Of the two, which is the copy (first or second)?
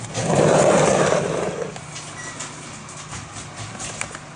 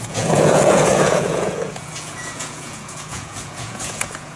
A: second